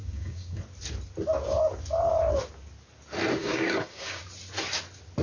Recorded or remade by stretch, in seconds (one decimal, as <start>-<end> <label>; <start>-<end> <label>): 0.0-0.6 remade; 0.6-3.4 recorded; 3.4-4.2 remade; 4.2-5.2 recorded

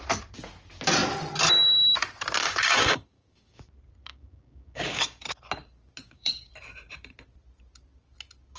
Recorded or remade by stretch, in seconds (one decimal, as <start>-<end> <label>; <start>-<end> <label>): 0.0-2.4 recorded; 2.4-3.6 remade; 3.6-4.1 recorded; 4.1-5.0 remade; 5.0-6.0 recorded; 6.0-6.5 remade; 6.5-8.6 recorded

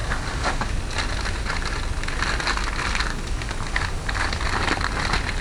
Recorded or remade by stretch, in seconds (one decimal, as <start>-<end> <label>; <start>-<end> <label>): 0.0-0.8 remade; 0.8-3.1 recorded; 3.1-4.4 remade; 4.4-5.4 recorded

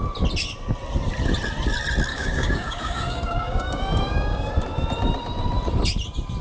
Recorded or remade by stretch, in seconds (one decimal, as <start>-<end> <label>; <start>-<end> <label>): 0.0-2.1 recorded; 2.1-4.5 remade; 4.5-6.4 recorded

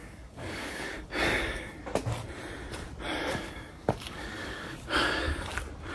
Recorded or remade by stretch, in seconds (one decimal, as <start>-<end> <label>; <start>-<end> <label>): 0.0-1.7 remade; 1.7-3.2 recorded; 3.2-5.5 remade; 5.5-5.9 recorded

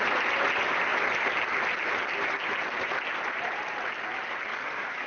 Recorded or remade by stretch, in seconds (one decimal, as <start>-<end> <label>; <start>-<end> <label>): 0.0-4.5 recorded; 4.5-5.1 remade

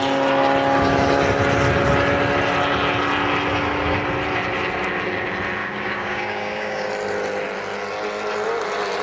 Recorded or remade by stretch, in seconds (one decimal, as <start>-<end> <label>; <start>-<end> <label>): 0.0-5.6 recorded; 5.6-6.9 remade; 6.9-9.0 recorded